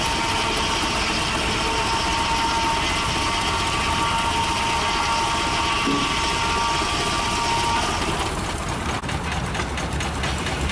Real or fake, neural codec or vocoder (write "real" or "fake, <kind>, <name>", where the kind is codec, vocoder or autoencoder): real